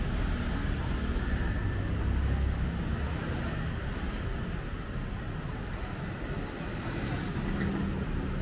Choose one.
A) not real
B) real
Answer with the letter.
B